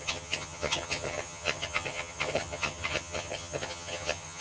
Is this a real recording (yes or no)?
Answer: no